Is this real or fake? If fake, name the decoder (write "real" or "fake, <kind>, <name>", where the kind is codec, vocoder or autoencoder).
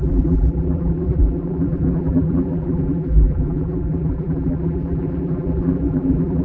fake, vocoder, BigVGAN v2